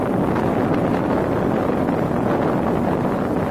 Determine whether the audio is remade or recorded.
recorded